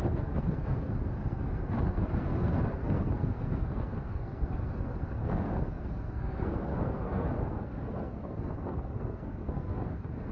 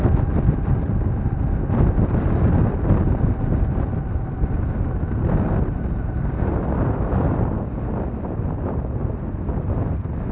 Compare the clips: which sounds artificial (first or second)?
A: first